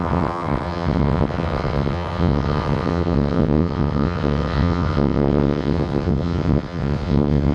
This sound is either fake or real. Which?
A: fake